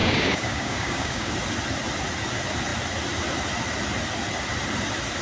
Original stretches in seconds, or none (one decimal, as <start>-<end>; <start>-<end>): 1.3-5.2